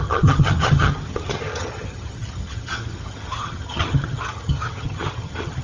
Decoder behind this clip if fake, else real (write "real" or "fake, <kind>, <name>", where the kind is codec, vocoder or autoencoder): fake, vocoder, HiFi-GAN